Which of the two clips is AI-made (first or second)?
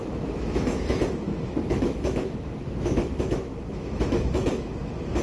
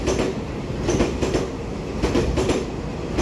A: first